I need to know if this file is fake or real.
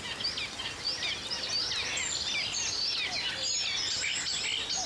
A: real